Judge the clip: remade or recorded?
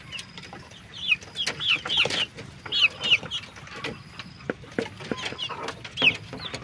recorded